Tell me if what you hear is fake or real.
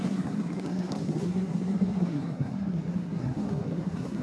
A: fake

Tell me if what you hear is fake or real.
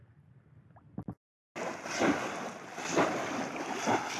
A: real